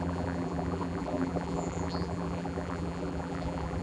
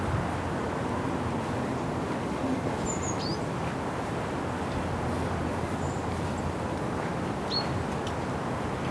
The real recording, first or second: second